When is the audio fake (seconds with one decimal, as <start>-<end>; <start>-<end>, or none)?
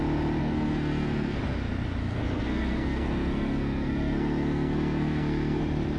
0.4-1.4; 2.0-5.6